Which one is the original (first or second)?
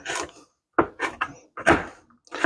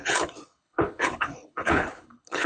first